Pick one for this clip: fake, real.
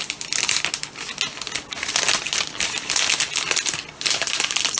real